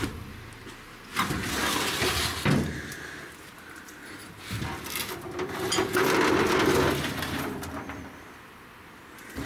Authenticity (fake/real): real